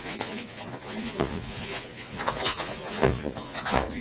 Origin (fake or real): fake